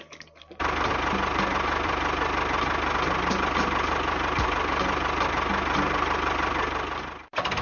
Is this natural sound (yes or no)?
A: yes